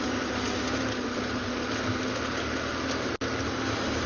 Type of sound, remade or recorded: recorded